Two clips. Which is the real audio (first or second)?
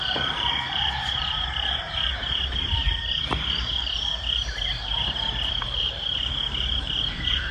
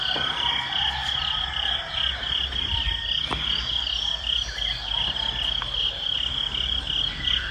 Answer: second